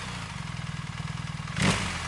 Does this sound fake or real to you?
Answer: real